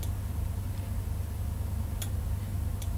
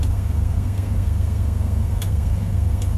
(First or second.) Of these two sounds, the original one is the first